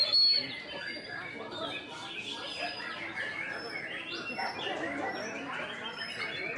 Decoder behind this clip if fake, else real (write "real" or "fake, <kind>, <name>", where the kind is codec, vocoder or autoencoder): real